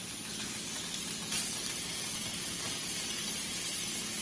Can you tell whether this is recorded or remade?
recorded